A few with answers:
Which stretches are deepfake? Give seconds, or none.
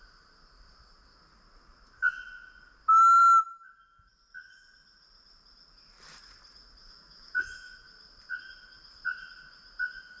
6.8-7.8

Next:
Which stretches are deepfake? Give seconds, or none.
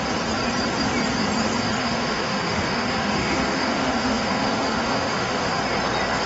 1.8-5.6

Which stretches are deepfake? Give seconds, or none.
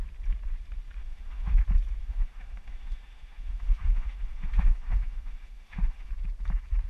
1.0-1.6; 2.0-6.1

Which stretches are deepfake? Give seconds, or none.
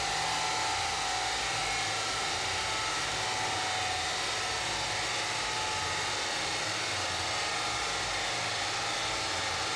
none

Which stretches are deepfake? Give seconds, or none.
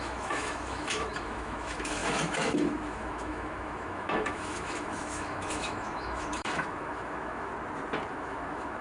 0.0-7.5; 8.1-8.8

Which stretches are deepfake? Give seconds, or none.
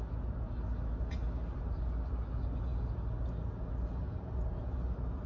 none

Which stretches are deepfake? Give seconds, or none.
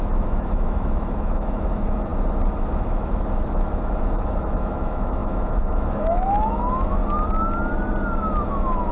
0.0-2.1; 2.6-7.0; 8.4-8.9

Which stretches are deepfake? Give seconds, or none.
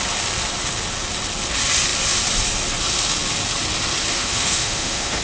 4.1-5.2